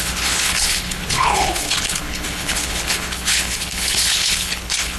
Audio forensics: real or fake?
fake